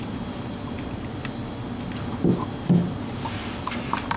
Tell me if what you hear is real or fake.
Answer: real